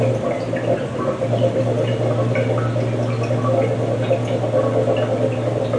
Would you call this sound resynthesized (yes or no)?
no